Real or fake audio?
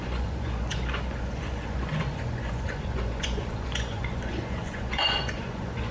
fake